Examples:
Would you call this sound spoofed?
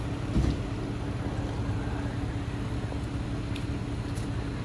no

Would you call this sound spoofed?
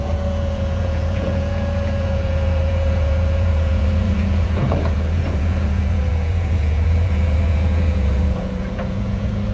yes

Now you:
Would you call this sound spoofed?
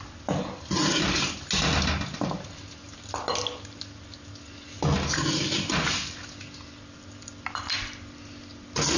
no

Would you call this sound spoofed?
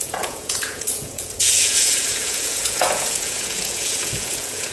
yes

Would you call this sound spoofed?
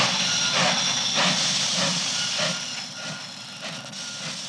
no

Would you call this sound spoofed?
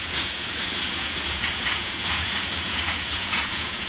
yes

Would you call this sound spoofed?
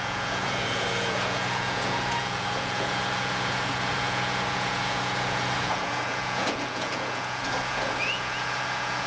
yes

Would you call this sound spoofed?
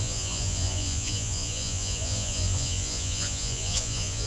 yes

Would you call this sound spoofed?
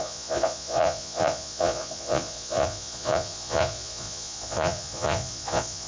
yes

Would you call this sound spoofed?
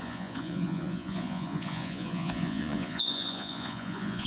yes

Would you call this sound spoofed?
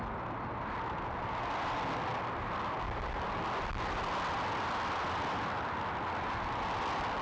no